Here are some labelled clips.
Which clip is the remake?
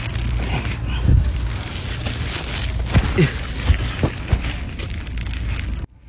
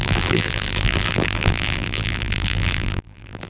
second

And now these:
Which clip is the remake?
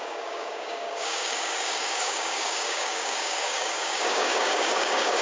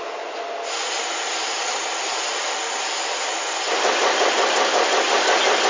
first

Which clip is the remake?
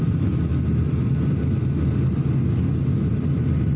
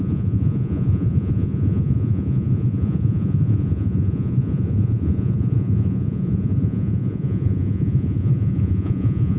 second